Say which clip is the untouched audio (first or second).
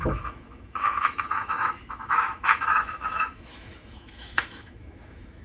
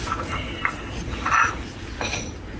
second